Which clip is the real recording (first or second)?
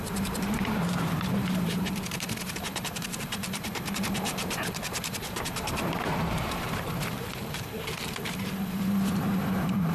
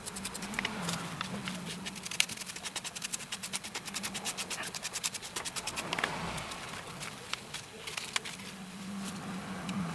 second